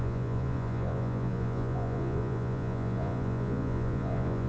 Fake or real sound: fake